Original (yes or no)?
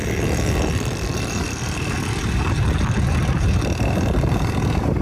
yes